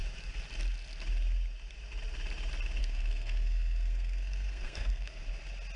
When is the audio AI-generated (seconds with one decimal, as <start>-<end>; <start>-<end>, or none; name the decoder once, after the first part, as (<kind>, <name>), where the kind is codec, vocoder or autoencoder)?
2.8-5.2 (codec, SNAC)